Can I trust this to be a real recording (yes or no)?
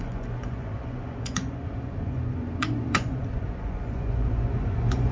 no